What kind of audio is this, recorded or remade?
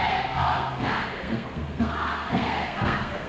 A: remade